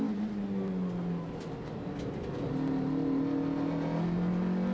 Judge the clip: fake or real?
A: real